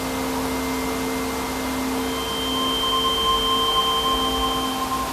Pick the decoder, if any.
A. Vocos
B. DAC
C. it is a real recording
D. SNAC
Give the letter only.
C